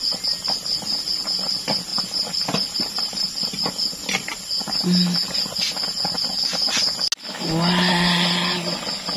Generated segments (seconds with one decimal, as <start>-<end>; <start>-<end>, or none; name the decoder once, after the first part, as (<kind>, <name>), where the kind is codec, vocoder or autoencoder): 1.9-3.7 (vocoder, BigVGAN v2)